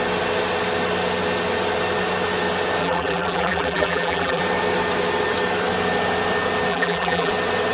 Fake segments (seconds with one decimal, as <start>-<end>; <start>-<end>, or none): 2.8-4.4; 6.7-7.3